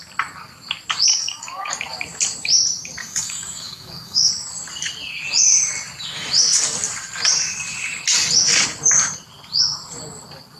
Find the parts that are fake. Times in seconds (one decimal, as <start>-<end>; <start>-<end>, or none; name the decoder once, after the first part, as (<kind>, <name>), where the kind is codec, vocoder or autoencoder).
1.1-1.7 (codec, DAC); 3.0-4.3